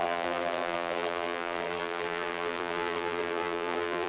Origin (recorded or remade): remade